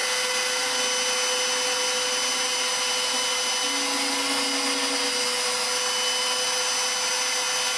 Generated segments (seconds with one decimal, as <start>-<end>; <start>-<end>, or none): none